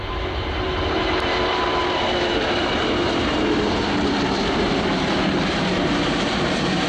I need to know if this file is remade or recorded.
remade